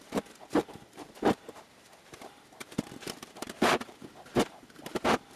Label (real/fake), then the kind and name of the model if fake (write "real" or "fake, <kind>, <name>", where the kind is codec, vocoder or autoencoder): fake, vocoder, BigVGAN v2